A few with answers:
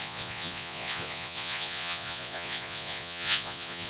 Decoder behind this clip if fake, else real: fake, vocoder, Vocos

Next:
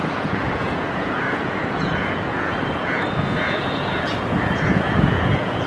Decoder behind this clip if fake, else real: fake, vocoder, Vocos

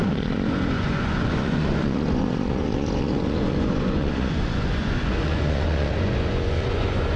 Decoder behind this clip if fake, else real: fake, vocoder, Vocos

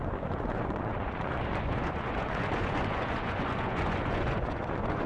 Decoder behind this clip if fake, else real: fake, vocoder, Vocos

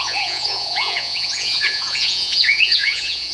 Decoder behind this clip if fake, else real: fake, vocoder, Vocos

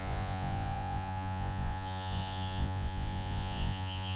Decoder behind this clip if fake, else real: fake, vocoder, Vocos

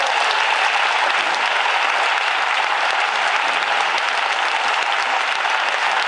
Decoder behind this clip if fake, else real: real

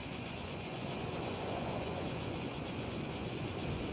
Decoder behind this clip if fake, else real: fake, vocoder, Vocos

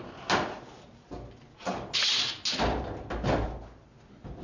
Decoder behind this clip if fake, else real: real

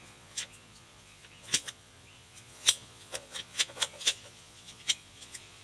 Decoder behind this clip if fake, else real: fake, vocoder, Vocos